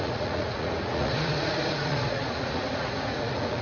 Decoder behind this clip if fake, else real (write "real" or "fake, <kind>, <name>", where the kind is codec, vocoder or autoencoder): fake, vocoder, Vocos